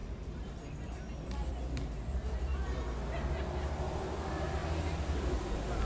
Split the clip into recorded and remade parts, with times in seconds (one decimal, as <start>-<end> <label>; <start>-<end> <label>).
0.0-5.8 recorded